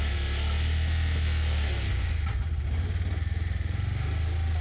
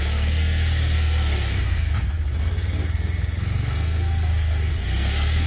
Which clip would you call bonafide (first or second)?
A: first